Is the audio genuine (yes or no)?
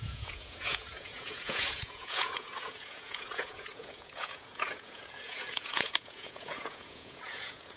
no